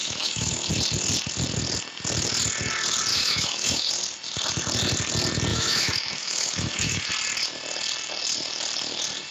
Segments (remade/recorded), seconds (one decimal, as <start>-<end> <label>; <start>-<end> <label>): 0.0-0.7 remade; 0.7-3.1 recorded; 3.1-3.9 remade; 3.9-5.5 recorded; 5.5-7.1 remade; 7.1-9.3 recorded